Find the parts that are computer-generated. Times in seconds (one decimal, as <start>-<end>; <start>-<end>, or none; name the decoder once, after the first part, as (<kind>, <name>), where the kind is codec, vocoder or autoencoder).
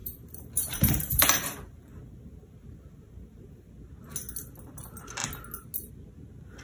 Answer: 0.0-3.7 (vocoder, BigVGAN v2)